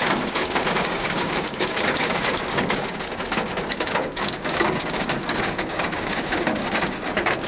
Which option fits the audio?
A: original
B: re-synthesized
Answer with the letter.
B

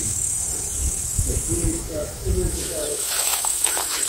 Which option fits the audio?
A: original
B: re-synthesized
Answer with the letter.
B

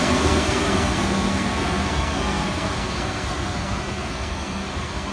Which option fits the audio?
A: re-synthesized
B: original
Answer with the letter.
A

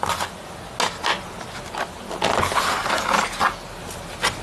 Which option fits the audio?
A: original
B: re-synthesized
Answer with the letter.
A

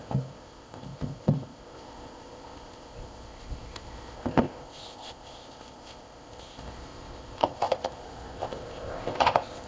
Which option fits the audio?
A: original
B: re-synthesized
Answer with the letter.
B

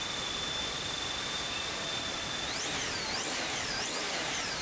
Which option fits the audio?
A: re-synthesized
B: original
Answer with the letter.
B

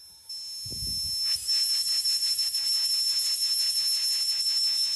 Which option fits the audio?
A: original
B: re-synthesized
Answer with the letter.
A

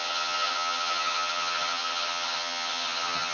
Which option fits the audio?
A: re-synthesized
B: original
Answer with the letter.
A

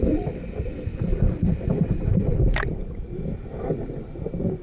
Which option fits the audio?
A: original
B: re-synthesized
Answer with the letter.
B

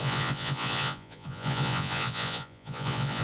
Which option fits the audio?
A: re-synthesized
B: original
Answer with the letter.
A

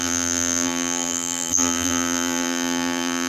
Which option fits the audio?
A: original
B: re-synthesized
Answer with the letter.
B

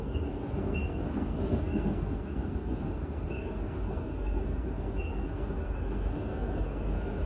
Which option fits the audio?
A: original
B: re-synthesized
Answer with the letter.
B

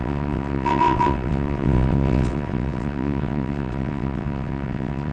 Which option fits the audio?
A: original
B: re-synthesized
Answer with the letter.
B